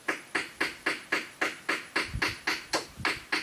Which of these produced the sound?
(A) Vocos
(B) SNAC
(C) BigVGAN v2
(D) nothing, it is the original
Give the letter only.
D